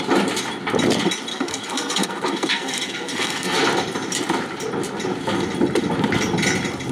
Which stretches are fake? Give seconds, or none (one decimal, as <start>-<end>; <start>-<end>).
1.3-3.6